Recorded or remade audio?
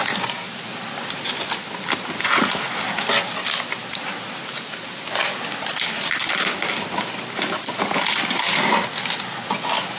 recorded